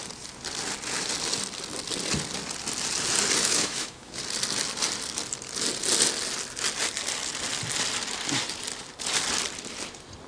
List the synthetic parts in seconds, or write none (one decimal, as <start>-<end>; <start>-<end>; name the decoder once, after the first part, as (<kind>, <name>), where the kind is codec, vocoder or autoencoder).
3.4-4.2 (autoencoder, DAC-VAE)